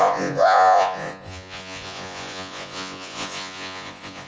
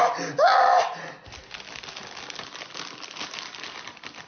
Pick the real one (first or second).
second